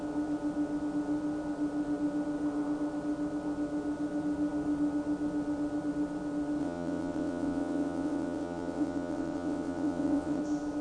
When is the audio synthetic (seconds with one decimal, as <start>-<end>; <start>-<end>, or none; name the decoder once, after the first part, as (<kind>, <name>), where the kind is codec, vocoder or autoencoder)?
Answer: 6.6-10.4 (vocoder, WaveNeXt)